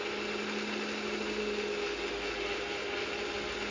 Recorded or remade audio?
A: recorded